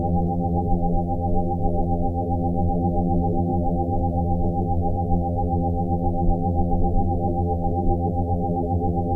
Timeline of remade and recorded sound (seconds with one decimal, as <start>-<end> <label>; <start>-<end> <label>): 0.0-9.2 remade